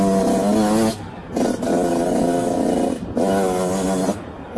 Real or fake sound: real